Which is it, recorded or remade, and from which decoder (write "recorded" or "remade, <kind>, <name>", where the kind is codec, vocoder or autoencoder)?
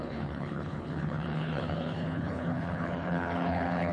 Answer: remade, codec, HILCodec